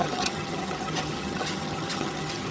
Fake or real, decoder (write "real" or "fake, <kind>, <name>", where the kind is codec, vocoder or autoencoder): fake, vocoder, HiFi-GAN